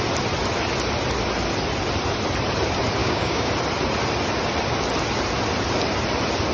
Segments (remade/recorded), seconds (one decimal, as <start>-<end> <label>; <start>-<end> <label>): 0.0-3.0 recorded; 3.0-3.5 remade; 3.5-6.5 recorded